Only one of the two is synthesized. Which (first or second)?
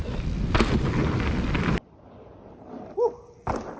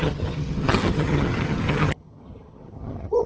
second